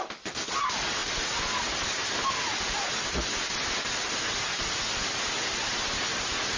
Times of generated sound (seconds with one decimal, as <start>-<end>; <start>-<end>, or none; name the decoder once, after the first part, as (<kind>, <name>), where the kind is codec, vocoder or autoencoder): none